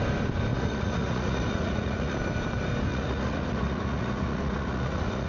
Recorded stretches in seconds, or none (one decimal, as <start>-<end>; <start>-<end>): 0.0-0.5; 2.2-2.9